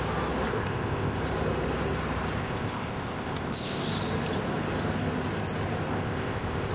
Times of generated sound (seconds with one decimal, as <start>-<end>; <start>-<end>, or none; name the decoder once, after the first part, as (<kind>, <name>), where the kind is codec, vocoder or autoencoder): 0.5-1.2 (codec, ZipCodec); 2.4-3.8; 5.9-6.7

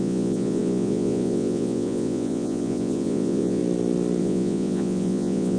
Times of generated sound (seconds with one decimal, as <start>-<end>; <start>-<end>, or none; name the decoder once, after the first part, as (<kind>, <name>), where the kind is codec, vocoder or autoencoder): 0.0-3.6 (vocoder, Vocos); 4.2-5.6

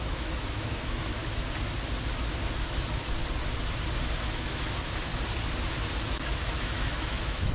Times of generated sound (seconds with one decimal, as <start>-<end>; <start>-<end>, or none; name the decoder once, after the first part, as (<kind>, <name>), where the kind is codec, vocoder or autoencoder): 0.0-1.2 (autoencoder, DAC-VAE); 2.5-3.2; 4.2-5.1; 6.1-7.5

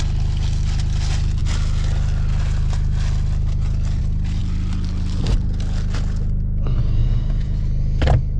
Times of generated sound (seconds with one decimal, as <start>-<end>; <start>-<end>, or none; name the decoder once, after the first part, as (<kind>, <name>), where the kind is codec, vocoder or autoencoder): 7.0-7.6 (vocoder, Vocos)

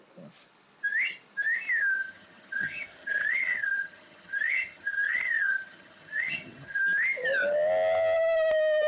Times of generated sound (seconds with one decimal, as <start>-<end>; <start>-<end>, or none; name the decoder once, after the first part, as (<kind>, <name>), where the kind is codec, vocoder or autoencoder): 2.0-6.8 (vocoder, HiFi-GAN)

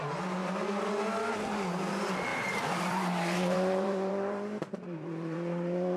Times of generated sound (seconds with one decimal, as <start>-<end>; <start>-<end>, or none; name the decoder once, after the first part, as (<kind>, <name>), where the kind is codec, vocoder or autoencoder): 2.3-6.0 (vocoder, BigVGAN v2)

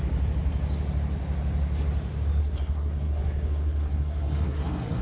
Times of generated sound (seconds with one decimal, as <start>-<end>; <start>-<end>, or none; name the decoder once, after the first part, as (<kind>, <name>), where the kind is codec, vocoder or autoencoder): 2.4-5.0 (codec, SNAC)